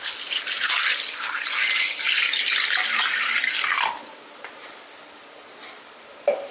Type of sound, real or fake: real